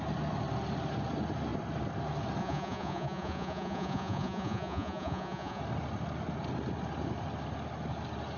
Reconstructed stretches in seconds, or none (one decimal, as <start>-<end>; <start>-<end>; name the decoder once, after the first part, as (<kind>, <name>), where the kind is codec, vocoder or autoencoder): 2.4-5.6 (vocoder, Vocos)